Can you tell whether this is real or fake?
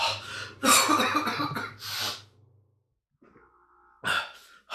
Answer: real